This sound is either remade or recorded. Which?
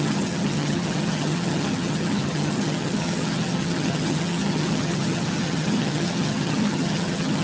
remade